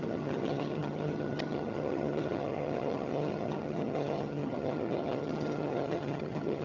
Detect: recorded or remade remade